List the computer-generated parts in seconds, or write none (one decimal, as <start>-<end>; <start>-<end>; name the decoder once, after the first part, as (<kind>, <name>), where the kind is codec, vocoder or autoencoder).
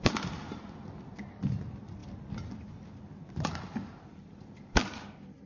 none